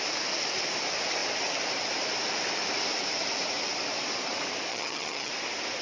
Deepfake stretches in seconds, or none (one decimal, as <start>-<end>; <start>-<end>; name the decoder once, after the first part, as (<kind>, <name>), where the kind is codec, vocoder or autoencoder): 4.7-5.3 (vocoder, HiFi-GAN)